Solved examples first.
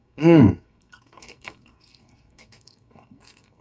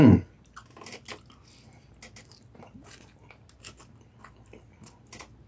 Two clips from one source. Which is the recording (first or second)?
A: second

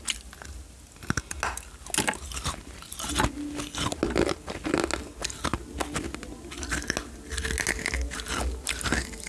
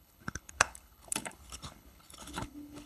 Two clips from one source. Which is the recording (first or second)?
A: first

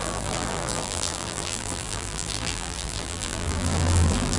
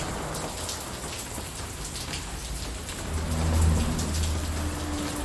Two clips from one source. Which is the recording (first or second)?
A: second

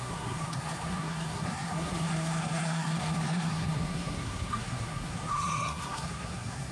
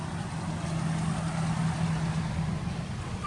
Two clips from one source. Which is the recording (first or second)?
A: second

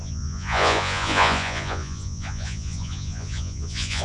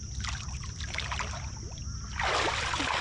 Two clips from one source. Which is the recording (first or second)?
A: second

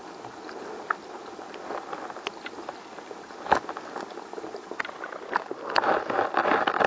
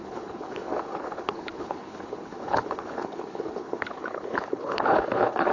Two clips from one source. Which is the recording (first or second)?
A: first